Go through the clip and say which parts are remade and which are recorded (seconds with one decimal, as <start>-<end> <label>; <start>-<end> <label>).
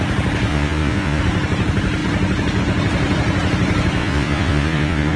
0.0-0.5 recorded; 0.5-1.2 remade; 1.2-4.0 recorded; 4.0-5.2 remade